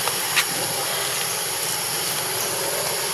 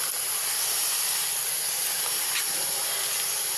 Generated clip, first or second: first